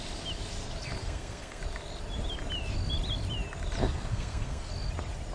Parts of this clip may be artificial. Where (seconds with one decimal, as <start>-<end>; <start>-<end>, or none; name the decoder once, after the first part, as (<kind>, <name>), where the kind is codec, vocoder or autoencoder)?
1.0-1.6 (codec, SNAC); 3.8-4.7

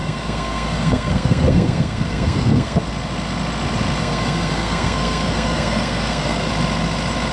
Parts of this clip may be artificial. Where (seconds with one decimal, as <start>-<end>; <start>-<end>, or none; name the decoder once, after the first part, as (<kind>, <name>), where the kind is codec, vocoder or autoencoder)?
0.0-2.8 (codec, SNAC); 4.0-6.5

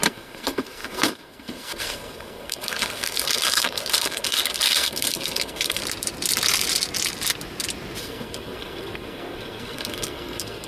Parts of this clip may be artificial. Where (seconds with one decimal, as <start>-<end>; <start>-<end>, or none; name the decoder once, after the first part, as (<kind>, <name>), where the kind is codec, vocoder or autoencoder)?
0.0-5.8 (codec, SNAC); 8.0-10.7

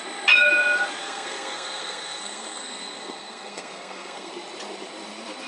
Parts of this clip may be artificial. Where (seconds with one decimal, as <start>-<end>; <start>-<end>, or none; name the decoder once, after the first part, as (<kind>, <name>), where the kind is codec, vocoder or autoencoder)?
1.0-4.3 (codec, SNAC)

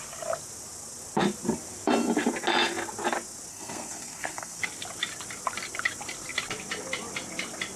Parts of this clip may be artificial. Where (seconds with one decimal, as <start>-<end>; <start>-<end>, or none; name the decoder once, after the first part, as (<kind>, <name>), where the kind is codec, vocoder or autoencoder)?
3.5-4.6 (codec, SNAC)